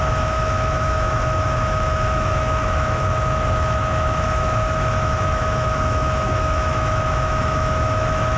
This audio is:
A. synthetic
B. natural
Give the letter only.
A